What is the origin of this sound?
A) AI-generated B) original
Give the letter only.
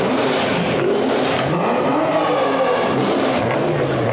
A